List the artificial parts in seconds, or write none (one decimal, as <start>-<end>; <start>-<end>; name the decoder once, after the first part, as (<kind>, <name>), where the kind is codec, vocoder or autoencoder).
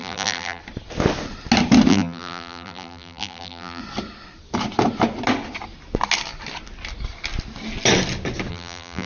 0.0-0.6 (vocoder, BigVGAN v2); 1.9-3.8; 8.5-9.1